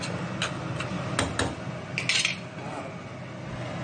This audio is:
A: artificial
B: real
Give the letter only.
B